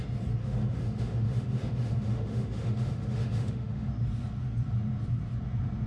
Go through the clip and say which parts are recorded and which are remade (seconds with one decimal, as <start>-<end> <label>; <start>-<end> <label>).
0.0-0.4 recorded; 0.4-3.9 remade; 3.9-5.9 recorded